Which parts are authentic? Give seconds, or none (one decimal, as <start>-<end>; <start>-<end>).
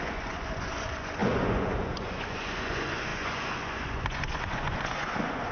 none